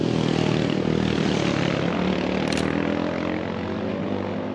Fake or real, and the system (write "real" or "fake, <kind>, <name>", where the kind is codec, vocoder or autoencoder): real